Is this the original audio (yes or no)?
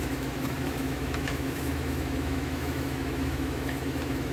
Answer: no